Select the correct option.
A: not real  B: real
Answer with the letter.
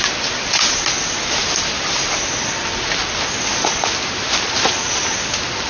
B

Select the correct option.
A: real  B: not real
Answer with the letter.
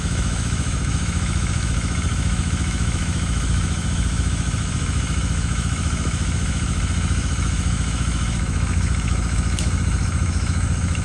B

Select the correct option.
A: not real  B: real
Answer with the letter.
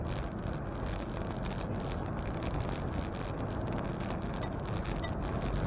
B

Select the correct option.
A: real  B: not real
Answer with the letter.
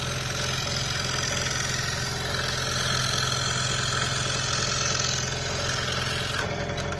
A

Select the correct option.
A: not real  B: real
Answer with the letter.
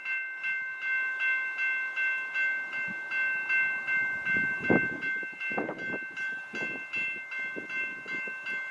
B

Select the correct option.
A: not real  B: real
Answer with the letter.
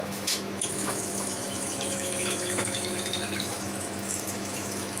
A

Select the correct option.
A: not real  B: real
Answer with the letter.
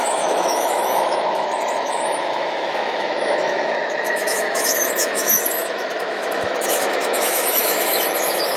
A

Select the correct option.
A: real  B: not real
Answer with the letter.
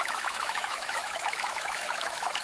B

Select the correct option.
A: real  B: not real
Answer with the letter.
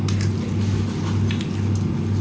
A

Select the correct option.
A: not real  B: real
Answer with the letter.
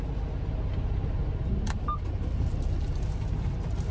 B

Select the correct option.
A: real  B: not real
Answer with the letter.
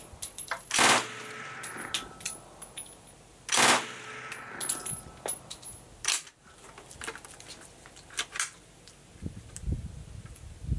A